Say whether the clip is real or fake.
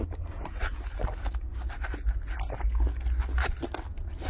real